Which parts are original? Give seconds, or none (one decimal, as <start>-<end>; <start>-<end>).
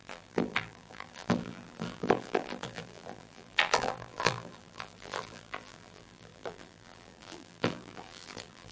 none